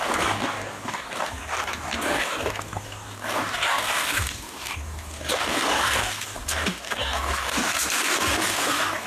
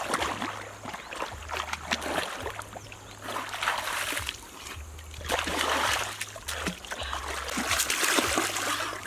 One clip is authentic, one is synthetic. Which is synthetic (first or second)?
first